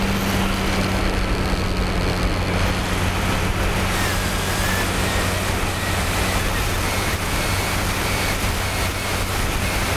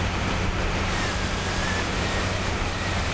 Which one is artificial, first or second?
second